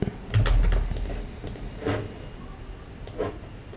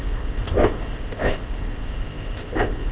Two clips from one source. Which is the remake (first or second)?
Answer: second